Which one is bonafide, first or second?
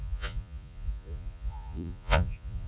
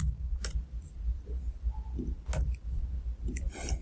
second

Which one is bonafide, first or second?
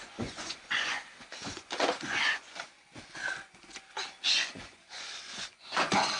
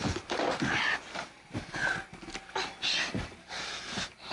second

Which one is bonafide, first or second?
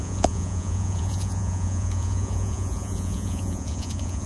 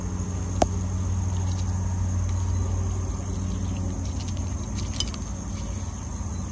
second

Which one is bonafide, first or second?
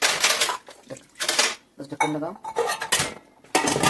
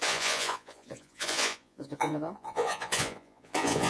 first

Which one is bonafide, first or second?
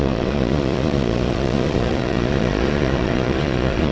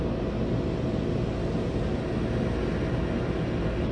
second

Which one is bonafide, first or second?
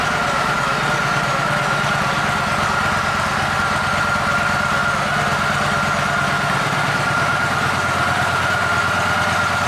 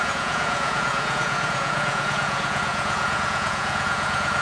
first